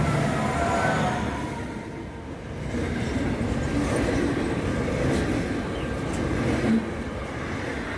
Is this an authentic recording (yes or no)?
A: yes